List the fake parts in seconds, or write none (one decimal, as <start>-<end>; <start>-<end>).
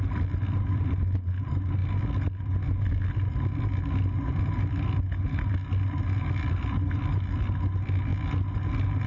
none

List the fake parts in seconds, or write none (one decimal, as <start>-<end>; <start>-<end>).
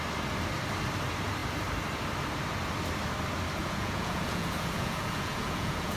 3.6-6.0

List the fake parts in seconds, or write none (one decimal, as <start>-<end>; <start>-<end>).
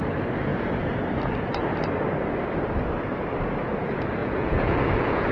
4.2-5.3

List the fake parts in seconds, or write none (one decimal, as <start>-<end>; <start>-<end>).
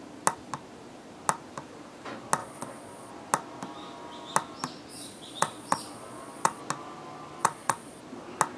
2.4-3.1; 4.9-6.6; 7.4-8.0